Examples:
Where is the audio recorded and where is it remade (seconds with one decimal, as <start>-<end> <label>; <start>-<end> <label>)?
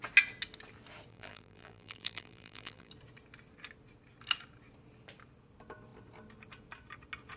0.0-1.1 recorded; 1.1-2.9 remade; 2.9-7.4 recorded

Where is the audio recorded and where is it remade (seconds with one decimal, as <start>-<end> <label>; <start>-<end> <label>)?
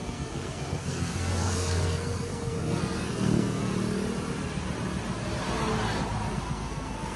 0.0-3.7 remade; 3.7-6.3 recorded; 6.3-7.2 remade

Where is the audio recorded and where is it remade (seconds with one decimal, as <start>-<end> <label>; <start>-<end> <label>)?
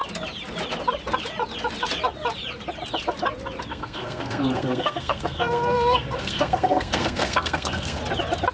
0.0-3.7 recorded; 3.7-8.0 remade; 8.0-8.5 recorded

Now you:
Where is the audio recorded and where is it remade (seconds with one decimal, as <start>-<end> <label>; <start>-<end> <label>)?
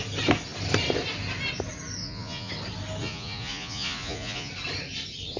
0.0-2.0 recorded; 2.0-2.5 remade; 2.5-3.0 recorded; 3.0-4.5 remade; 4.5-5.4 recorded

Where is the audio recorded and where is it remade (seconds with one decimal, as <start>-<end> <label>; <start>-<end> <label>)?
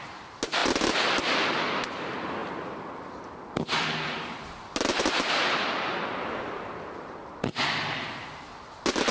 0.0-9.1 recorded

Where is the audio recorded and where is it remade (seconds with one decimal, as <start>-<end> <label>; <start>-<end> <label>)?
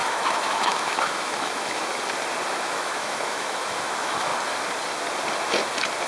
0.0-1.9 remade; 1.9-2.5 recorded; 2.5-4.3 remade; 4.3-6.1 recorded